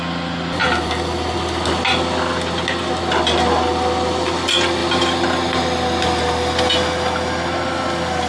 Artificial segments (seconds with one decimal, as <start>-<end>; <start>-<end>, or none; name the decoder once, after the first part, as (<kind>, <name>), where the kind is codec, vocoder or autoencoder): none